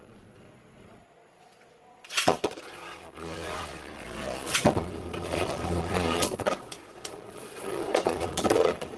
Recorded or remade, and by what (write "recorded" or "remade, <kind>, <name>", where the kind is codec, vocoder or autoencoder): remade, vocoder, Vocos